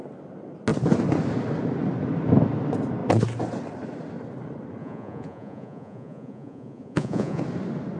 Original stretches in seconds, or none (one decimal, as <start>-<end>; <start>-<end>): 0.0-4.8; 7.4-8.0